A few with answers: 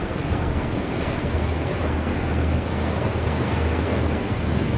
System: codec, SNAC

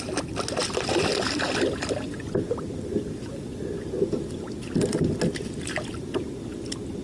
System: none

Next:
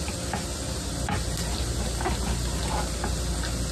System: none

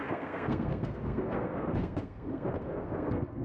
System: codec, SNAC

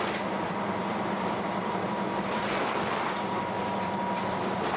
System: vocoder, BigVGAN v2